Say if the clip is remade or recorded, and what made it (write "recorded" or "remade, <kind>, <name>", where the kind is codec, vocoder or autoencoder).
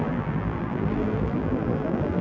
remade, vocoder, BigVGAN v2